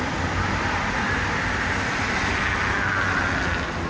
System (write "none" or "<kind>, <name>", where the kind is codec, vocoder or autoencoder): none